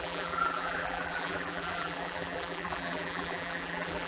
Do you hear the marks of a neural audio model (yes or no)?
yes